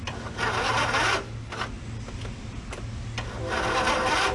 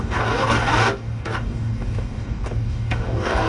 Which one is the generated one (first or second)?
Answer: second